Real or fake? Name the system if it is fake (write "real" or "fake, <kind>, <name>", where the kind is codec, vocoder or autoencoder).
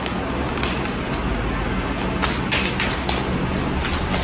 real